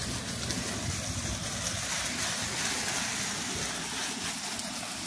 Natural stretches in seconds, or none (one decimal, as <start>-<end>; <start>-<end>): 0.0-5.1